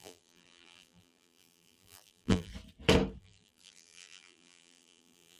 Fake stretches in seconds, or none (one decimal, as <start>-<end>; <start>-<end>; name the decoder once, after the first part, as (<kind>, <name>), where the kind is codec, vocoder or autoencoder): 0.0-2.5 (vocoder, BigVGAN v2); 3.2-5.4